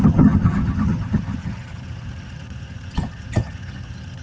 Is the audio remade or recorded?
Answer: remade